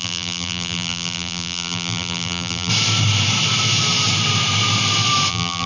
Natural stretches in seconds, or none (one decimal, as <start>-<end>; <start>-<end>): 2.7-5.3